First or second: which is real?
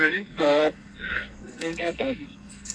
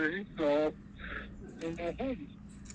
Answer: second